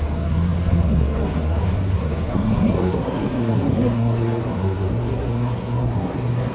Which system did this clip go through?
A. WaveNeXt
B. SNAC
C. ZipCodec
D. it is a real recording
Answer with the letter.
B